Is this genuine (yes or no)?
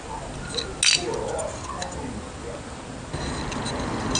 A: yes